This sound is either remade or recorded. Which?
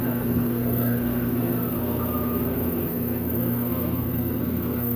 remade